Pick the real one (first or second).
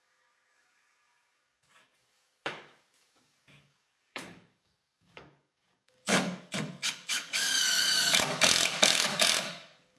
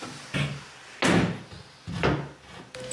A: second